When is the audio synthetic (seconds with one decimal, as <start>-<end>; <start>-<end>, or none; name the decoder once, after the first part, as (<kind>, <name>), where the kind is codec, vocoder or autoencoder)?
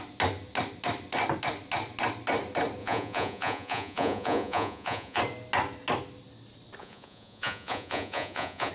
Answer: 2.8-5.2 (vocoder, Vocos); 6.8-8.7